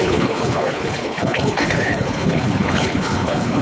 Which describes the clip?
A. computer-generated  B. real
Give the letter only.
A